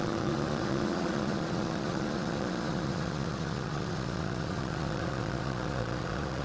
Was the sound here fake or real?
fake